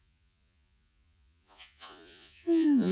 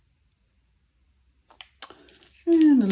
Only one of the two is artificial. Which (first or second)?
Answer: first